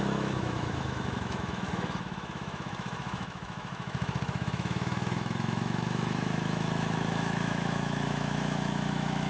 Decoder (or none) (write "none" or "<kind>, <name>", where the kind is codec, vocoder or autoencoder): autoencoder, DAC-VAE